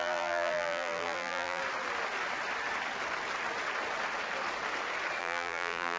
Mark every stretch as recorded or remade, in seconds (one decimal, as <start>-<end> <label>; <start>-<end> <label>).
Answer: 0.0-1.6 remade; 1.6-5.2 recorded; 5.2-6.0 remade